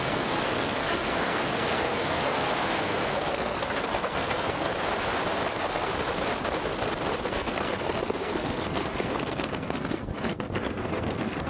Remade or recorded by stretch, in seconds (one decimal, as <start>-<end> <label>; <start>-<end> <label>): 0.0-4.7 remade; 4.7-5.5 recorded; 5.5-5.9 remade; 5.9-7.3 recorded; 7.3-11.5 remade